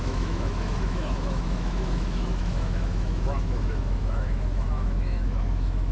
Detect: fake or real fake